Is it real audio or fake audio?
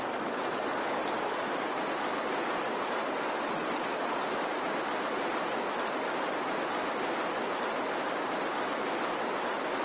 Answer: real